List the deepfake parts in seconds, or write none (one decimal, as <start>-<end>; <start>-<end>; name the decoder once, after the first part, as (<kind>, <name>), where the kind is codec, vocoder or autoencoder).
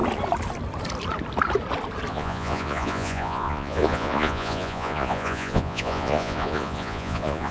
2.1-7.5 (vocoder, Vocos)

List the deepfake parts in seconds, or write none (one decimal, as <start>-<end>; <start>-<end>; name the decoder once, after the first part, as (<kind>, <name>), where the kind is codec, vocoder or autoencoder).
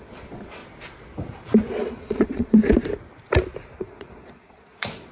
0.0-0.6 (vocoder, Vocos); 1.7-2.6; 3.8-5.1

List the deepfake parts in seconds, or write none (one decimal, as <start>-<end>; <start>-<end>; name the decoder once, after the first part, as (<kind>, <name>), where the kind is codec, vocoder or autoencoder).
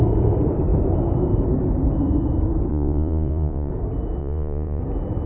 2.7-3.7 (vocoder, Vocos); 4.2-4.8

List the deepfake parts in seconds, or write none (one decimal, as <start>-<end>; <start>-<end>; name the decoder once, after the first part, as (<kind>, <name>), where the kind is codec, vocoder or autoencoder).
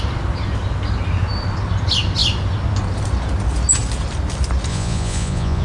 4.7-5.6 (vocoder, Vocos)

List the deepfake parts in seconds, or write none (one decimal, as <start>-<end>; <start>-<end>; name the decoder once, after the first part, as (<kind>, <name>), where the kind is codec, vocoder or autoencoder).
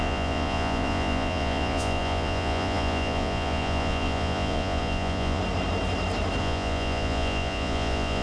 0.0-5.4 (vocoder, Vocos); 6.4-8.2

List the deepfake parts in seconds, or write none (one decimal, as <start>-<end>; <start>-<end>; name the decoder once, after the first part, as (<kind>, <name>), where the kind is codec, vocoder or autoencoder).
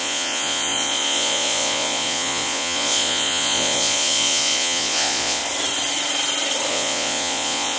0.0-5.4 (vocoder, Vocos); 6.7-7.8